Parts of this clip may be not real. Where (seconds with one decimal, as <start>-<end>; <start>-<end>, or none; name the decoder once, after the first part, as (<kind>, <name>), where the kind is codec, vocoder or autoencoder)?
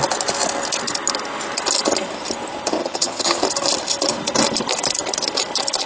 2.8-3.4 (vocoder, HiFi-GAN)